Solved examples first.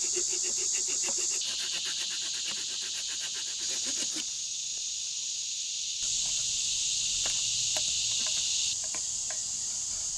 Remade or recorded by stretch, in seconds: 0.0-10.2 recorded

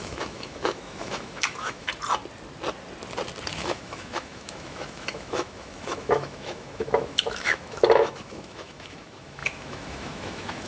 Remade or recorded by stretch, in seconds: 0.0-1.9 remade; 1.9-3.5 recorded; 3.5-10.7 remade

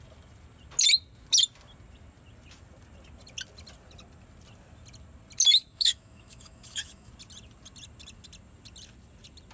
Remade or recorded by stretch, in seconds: 0.0-5.5 recorded; 5.5-7.1 remade; 7.1-9.5 recorded

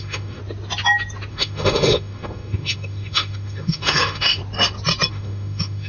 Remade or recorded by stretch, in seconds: 0.0-0.4 remade; 0.4-1.3 recorded; 1.3-4.4 remade; 4.4-5.1 recorded; 5.1-5.9 remade

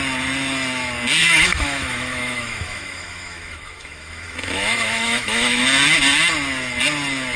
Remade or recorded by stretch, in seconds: 0.0-1.2 recorded; 1.2-5.6 remade; 5.6-7.4 recorded